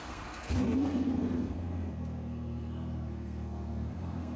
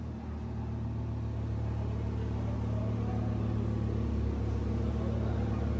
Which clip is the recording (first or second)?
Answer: second